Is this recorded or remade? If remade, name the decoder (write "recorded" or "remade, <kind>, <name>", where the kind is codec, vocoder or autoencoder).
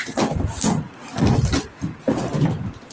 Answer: recorded